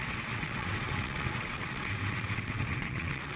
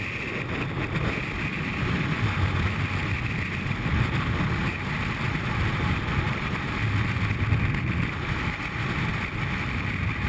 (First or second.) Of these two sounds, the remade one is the first